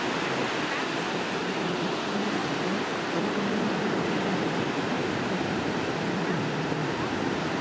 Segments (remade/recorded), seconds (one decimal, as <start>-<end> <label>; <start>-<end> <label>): 0.0-1.4 recorded; 1.4-1.9 remade; 1.9-2.4 recorded; 2.4-5.9 remade; 5.9-6.8 recorded; 6.8-7.6 remade